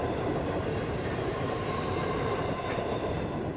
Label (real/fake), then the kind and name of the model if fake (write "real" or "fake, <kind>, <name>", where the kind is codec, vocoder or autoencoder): fake, vocoder, BigVGAN v2